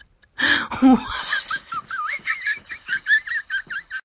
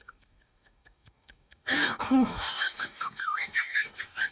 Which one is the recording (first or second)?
first